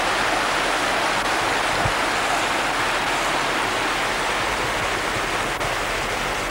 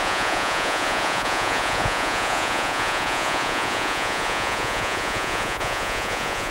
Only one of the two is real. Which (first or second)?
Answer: first